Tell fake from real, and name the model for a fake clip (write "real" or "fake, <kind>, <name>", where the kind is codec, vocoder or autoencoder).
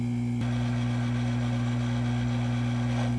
real